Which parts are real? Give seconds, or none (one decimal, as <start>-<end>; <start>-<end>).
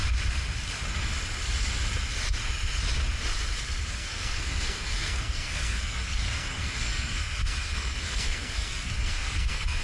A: 0.0-3.9